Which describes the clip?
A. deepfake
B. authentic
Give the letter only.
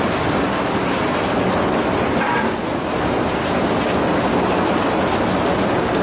B